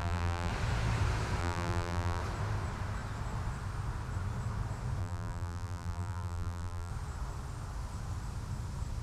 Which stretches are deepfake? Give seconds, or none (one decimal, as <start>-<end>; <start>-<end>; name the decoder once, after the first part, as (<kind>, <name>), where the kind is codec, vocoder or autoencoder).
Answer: 0.0-0.5 (vocoder, BigVGAN v2); 1.4-2.2; 5.0-6.9